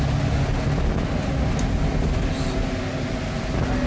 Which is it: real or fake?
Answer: real